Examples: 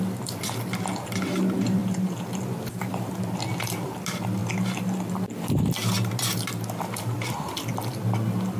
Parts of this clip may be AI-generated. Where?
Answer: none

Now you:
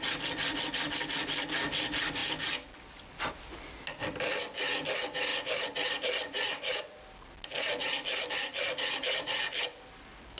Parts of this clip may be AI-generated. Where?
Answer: none

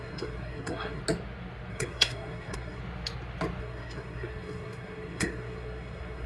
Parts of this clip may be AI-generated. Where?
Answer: 0.0-1.0 (codec, SNAC); 1.7-2.8; 3.6-6.3